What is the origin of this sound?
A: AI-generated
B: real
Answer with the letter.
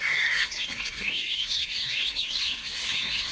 A